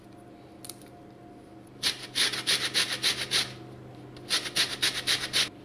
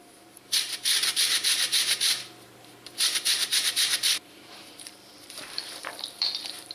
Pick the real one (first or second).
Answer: first